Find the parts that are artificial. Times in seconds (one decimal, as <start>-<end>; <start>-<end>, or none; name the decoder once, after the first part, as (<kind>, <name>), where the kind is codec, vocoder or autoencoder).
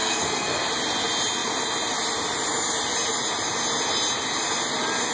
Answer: 0.0-0.6 (codec, SNAC)